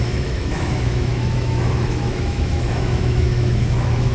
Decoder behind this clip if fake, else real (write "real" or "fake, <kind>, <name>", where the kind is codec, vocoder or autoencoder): fake, autoencoder, DAC-VAE